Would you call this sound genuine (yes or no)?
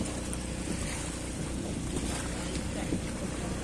yes